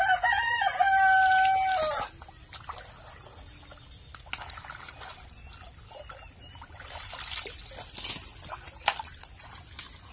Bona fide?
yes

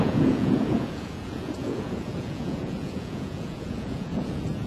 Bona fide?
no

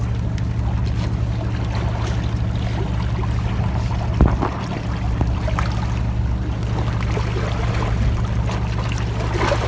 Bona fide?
yes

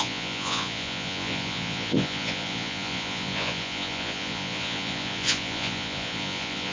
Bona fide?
no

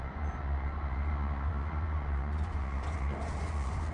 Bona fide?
no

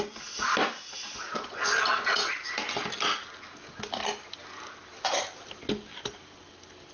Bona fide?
yes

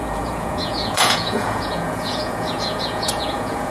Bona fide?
no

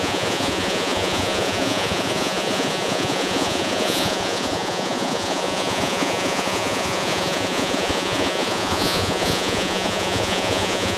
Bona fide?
no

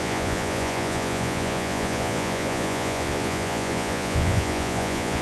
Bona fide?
no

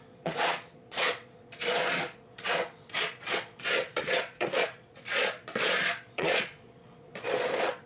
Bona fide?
no